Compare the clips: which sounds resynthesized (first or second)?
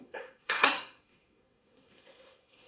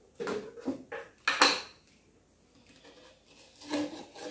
first